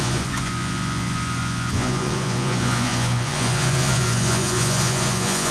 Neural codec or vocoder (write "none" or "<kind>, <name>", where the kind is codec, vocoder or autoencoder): vocoder, Vocos